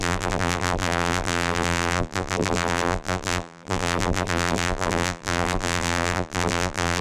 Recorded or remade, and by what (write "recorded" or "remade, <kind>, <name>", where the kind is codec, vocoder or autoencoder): remade, vocoder, BigVGAN v2